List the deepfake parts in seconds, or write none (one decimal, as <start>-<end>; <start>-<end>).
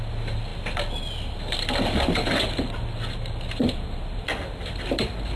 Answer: none